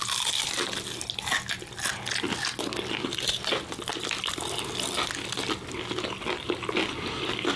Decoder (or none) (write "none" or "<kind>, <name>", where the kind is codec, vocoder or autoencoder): none